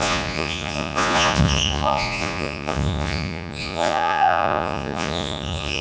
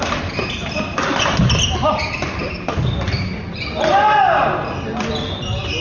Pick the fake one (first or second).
first